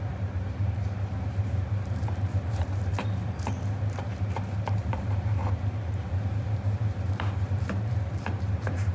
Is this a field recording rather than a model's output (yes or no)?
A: no